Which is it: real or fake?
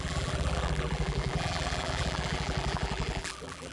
fake